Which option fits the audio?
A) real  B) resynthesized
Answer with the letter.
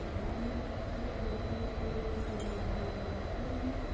A